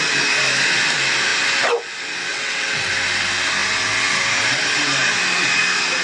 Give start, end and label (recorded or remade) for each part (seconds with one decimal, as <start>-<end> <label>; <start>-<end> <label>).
0.0-2.3 recorded; 2.3-2.9 remade; 2.9-6.0 recorded